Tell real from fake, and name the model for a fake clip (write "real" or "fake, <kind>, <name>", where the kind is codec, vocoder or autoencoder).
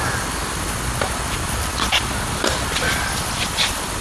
real